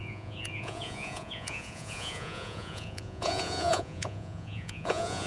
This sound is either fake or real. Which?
fake